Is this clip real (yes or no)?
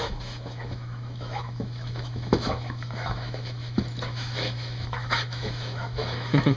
no